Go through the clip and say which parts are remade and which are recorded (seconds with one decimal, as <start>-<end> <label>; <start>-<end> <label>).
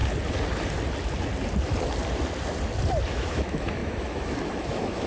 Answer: 0.0-3.1 recorded; 3.1-5.1 remade